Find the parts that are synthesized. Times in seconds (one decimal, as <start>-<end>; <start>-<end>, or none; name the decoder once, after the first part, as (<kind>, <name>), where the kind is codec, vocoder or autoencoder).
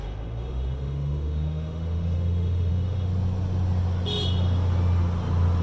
0.0-3.1 (autoencoder, DAC-VAE)